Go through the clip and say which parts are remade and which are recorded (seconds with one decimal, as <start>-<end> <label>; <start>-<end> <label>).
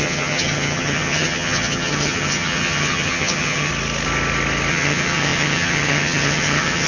0.0-3.7 remade; 3.7-4.7 recorded; 4.7-6.9 remade